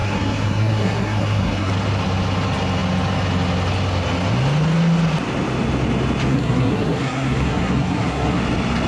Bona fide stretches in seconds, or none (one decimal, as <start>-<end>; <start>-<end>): 1.7-6.3; 8.4-8.9